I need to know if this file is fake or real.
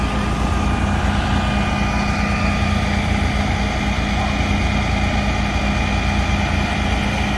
real